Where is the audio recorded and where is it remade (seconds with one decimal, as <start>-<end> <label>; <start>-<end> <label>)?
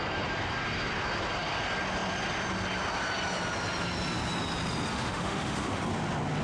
0.0-4.9 recorded; 4.9-5.8 remade; 5.8-6.4 recorded